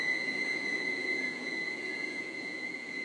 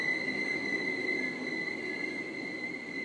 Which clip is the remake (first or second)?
first